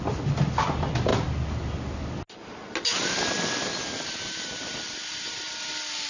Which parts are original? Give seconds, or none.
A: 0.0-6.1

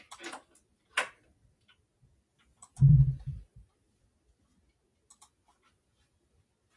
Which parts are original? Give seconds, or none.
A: 0.0-6.8